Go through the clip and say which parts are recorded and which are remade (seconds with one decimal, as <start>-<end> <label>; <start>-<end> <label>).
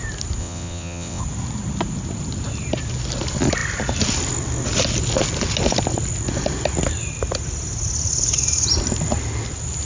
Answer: 0.0-0.4 recorded; 0.4-1.2 remade; 1.2-9.8 recorded